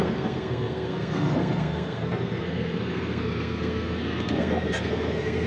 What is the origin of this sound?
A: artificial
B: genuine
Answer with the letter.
A